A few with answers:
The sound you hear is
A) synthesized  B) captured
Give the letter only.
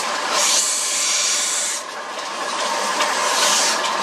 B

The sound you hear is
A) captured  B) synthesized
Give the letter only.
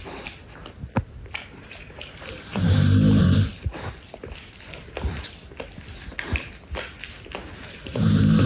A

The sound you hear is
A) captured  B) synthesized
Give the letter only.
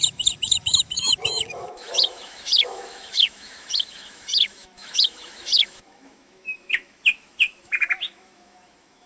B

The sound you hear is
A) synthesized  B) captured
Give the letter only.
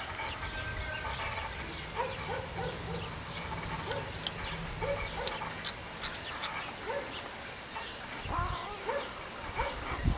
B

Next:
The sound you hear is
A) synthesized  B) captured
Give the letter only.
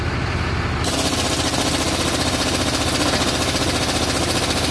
B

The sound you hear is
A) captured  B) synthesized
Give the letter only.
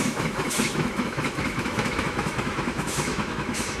B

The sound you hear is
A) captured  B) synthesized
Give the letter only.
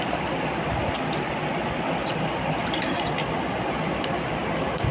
A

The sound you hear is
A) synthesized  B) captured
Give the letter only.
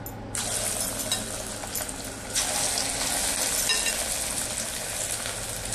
B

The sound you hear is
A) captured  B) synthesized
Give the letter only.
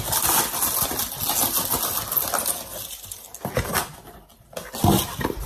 A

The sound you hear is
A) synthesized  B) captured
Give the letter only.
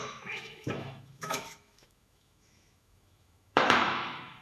A